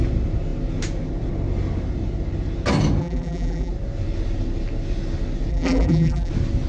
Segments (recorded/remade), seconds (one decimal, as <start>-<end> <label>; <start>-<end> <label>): 0.0-3.0 recorded; 3.0-3.7 remade; 3.7-5.5 recorded; 5.5-6.3 remade; 6.3-6.7 recorded